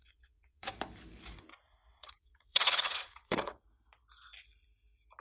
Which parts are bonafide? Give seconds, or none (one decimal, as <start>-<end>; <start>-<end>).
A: 0.7-1.9; 3.6-5.2